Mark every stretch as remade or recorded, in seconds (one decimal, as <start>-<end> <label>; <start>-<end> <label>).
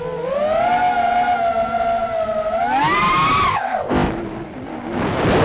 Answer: 0.0-3.5 recorded; 3.5-4.1 remade; 4.1-5.4 recorded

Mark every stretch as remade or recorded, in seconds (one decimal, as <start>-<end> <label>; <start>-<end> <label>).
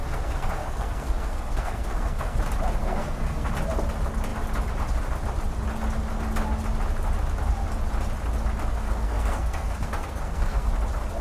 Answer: 0.0-2.4 remade; 2.4-2.8 recorded; 2.8-3.5 remade; 3.5-8.7 recorded; 8.7-10.7 remade; 10.7-11.2 recorded